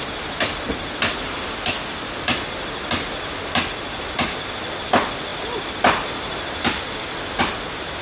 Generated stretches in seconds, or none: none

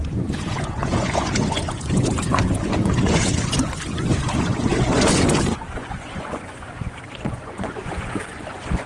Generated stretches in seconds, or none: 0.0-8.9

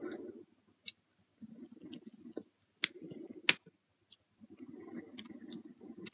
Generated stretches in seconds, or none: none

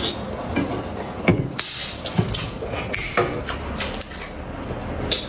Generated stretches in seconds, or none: none